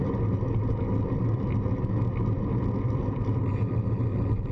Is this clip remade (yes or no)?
no